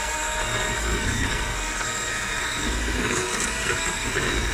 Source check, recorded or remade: remade